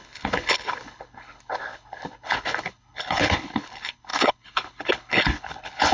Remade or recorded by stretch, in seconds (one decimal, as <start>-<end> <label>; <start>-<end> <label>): 0.0-5.9 remade